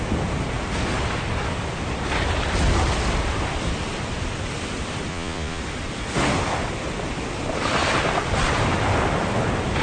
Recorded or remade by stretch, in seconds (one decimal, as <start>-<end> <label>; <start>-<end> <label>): 0.0-5.1 recorded; 5.1-5.6 remade; 5.6-9.8 recorded